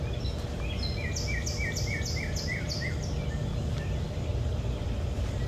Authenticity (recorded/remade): recorded